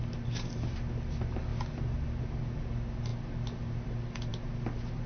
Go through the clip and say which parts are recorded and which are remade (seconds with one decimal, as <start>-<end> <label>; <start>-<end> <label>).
0.0-5.1 recorded